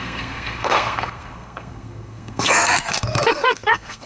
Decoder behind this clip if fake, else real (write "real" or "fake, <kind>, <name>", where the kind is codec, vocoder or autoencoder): fake, codec, SNAC